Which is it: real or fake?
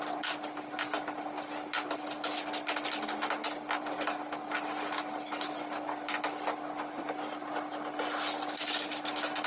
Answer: real